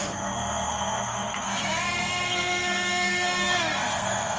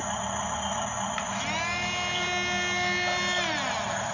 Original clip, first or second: second